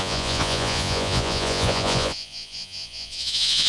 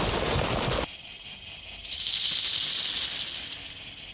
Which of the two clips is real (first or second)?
second